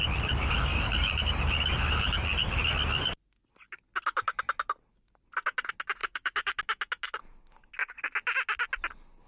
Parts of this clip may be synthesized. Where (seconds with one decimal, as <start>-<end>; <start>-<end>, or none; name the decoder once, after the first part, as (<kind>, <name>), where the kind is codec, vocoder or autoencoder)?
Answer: 0.7-1.4 (codec, DAC); 6.0-6.6